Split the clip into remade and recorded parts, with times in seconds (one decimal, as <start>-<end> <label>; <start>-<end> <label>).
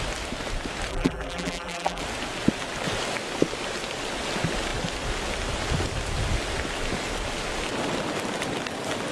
0.0-0.9 recorded; 0.9-2.0 remade; 2.0-9.1 recorded